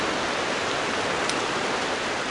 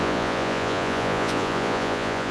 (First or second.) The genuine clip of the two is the first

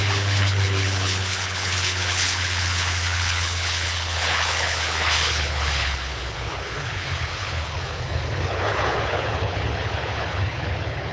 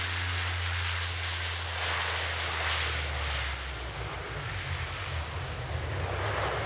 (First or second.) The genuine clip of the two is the second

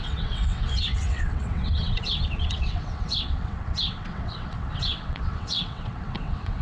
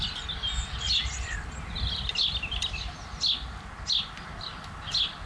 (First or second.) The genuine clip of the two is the second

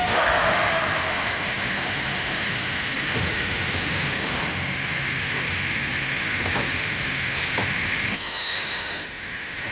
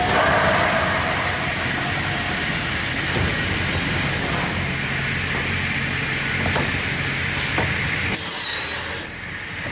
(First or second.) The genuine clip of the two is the second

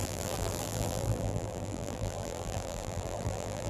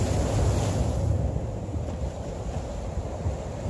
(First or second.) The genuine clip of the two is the second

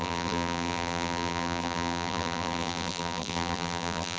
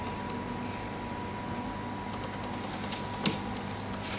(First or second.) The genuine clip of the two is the second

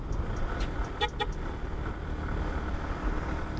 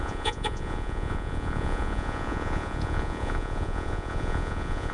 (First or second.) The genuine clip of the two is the first